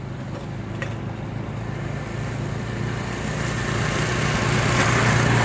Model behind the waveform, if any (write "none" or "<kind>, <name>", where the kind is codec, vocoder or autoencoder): none